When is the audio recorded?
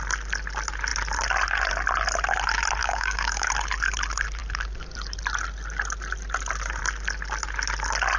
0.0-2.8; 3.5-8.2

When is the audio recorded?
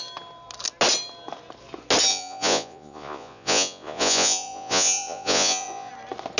0.0-2.1; 5.9-6.4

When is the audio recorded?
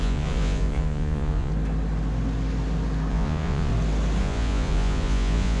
1.5-3.1; 3.7-4.2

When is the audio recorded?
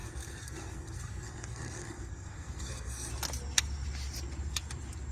3.1-5.1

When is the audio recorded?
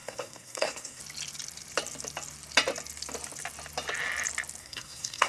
1.0-4.6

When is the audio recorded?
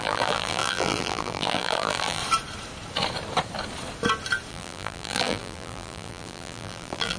2.2-4.5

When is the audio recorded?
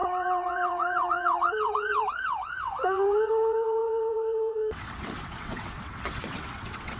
none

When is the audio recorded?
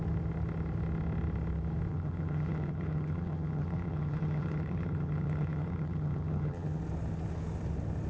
0.0-1.9; 6.8-8.1